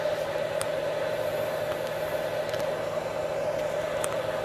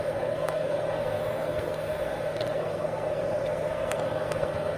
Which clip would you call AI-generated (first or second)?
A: second